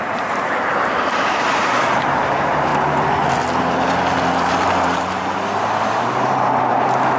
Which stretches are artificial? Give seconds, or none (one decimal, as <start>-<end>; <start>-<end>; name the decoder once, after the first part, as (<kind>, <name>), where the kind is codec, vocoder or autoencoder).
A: 0.0-2.7 (vocoder, BigVGAN v2); 6.0-7.2